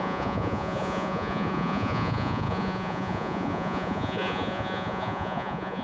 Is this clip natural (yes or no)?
no